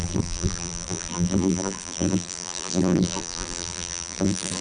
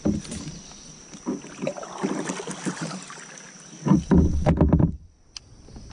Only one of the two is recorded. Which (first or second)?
second